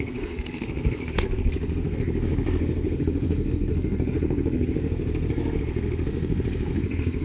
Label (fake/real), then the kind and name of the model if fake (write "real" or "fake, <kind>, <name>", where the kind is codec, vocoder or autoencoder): fake, codec, SNAC